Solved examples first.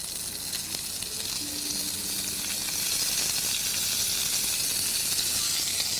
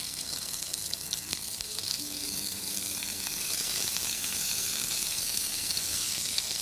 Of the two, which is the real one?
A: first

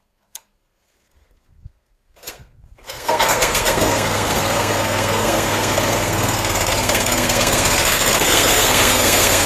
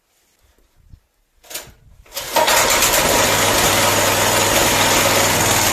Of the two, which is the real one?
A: second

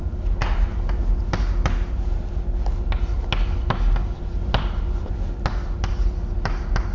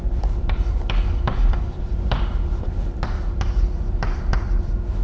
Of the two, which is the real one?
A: first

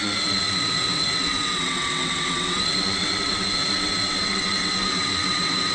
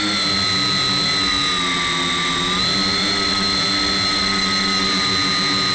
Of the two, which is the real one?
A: second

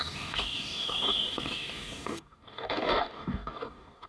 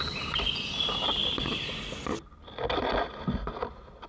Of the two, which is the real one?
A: second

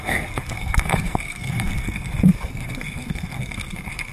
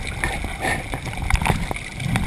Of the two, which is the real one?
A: second